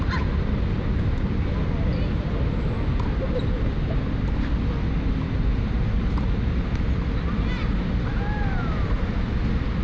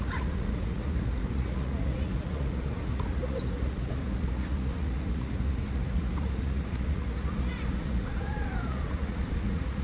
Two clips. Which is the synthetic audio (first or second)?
second